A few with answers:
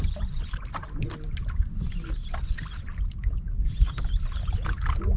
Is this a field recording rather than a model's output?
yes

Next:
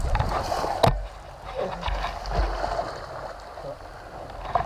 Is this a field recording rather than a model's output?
yes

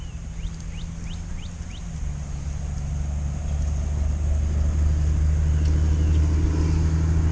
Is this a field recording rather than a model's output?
yes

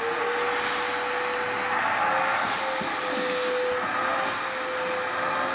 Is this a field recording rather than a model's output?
yes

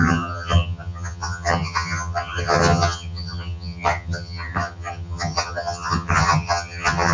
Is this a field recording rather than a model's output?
no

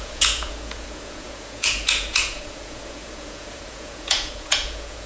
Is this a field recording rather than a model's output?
no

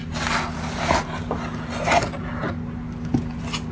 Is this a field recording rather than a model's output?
yes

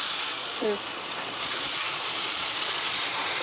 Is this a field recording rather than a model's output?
no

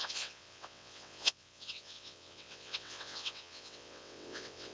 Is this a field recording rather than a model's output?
no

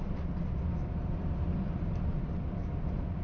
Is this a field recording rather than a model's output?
yes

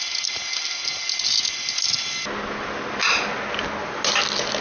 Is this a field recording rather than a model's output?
yes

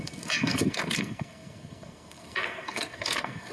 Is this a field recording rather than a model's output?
no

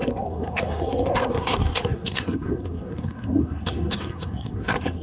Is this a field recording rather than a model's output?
no